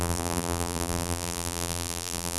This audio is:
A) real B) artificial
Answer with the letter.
B